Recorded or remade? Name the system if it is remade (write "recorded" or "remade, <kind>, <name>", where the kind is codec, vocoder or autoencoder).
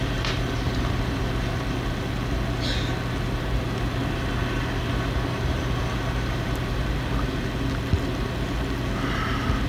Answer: recorded